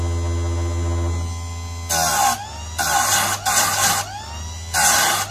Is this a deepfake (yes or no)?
no